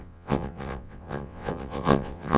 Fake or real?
fake